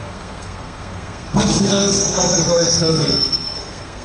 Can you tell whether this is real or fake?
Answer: fake